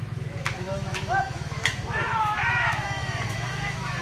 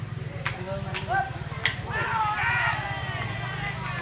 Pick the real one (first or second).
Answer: second